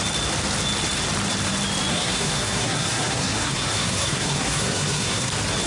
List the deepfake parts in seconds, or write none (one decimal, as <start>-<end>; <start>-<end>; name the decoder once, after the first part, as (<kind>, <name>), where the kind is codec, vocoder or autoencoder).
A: 1.9-5.3 (codec, SNAC)